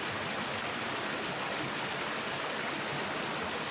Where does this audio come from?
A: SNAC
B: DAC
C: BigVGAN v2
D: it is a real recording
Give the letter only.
D